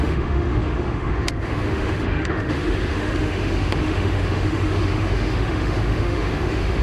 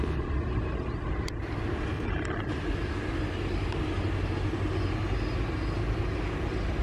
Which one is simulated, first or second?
first